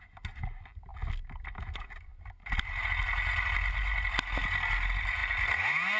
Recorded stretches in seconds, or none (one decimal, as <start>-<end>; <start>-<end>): 0.0-6.0